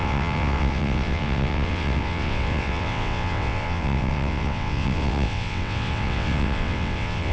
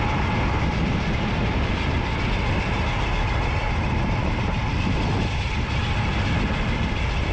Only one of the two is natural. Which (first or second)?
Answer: second